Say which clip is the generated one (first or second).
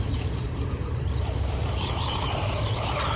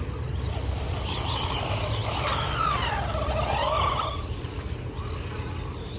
first